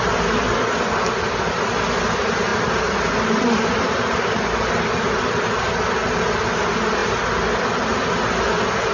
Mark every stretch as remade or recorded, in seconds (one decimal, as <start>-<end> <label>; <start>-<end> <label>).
0.0-2.5 recorded; 2.5-4.4 remade; 4.4-8.9 recorded